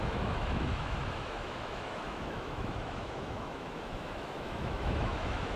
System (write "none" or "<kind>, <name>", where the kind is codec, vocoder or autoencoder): autoencoder, DAC-VAE